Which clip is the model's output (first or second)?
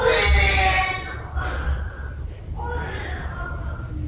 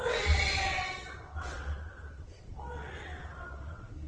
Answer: second